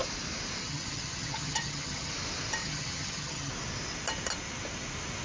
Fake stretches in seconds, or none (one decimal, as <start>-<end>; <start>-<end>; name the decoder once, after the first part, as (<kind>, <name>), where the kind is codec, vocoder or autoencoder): 0.6-2.1 (vocoder, HiFi-GAN); 2.6-3.5